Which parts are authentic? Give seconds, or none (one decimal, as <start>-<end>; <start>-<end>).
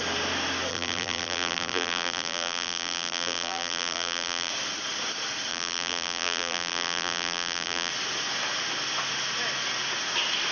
0.0-0.7; 4.5-5.5; 7.9-10.5